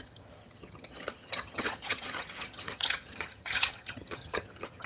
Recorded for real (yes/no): no